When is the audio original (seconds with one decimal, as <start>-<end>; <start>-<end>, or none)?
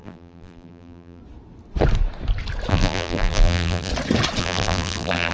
1.2-2.7; 3.9-4.4